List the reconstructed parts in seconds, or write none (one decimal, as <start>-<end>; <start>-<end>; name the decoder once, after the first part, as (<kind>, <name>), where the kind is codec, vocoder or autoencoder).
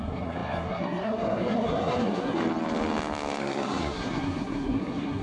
0.0-2.4 (codec, SNAC); 3.4-5.2